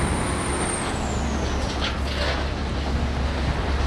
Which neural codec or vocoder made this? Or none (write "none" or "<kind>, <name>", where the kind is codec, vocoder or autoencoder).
none